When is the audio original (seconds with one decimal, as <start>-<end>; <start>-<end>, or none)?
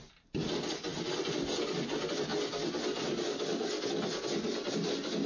0.0-5.3